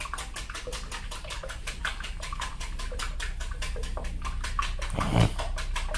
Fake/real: real